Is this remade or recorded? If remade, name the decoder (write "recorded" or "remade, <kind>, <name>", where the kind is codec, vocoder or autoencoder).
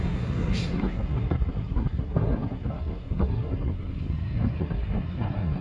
remade, codec, SNAC